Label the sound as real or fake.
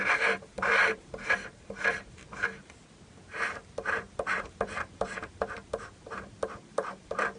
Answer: fake